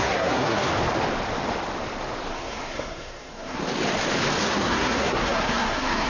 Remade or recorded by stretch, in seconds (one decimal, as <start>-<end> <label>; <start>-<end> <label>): 0.0-0.7 remade; 0.7-2.3 recorded; 2.3-3.6 remade; 3.6-4.4 recorded; 4.4-6.1 remade